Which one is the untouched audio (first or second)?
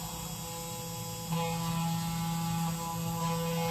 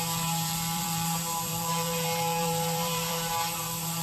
first